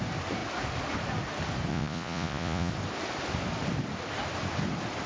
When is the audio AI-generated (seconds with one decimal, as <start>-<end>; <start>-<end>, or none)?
1.7-2.7